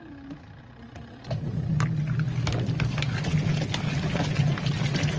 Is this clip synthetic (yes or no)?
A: no